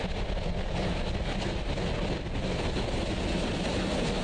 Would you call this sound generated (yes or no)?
no